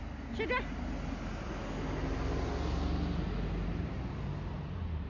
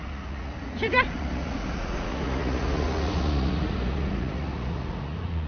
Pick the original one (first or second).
first